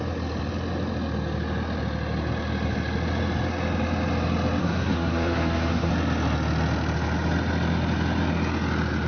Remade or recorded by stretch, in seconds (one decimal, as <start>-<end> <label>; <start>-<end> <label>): 0.0-4.6 recorded; 4.6-5.9 remade; 5.9-9.1 recorded